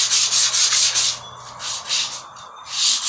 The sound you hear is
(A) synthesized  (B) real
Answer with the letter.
B